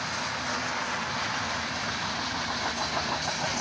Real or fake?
real